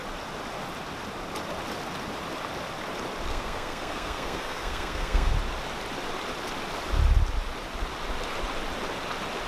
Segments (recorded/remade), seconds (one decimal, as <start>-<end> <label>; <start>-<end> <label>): 0.0-3.3 recorded; 3.3-5.3 remade; 5.3-9.5 recorded